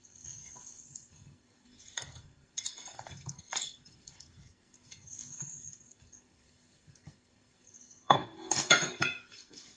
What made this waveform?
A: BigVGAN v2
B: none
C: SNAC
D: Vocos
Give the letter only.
C